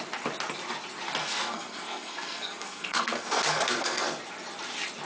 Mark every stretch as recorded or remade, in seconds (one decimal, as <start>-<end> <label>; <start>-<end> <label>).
0.0-1.2 recorded; 1.2-4.2 remade; 4.2-5.0 recorded